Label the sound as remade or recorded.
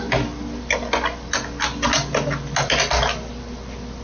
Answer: recorded